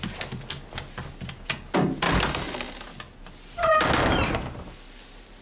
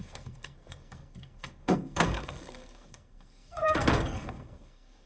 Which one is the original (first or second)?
first